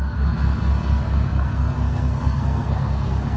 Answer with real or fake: fake